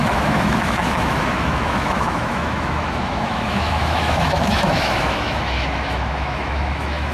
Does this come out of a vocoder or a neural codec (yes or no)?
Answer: yes